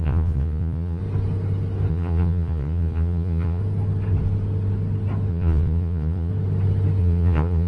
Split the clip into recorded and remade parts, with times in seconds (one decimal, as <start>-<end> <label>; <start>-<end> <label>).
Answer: 0.0-1.0 remade; 1.0-1.9 recorded; 1.9-3.6 remade; 3.6-5.3 recorded; 5.3-6.3 remade; 6.3-7.0 recorded; 7.0-7.7 remade